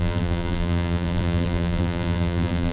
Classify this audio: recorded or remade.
remade